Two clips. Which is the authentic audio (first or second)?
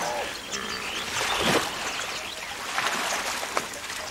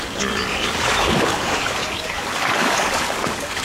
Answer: first